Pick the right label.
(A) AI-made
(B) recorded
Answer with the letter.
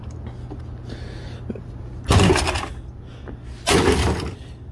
B